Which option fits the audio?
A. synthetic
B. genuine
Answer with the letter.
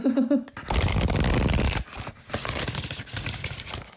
B